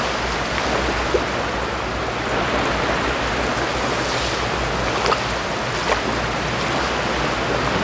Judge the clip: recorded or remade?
recorded